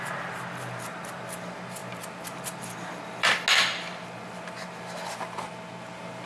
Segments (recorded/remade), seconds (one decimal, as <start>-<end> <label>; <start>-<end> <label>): 0.0-6.2 recorded